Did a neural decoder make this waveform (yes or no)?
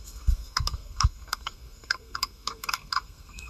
yes